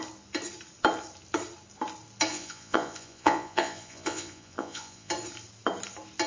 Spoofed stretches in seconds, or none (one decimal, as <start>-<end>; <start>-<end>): 2.3-5.1